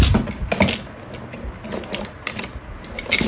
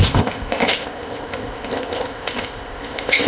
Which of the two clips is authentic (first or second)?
first